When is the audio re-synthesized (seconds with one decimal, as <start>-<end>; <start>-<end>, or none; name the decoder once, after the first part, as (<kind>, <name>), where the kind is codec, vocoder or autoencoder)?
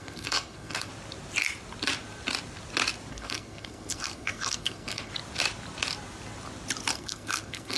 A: 0.0-0.9 (codec, SNAC); 3.1-5.1; 6.9-7.8